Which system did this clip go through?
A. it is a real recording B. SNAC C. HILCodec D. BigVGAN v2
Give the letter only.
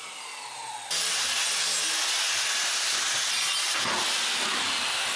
A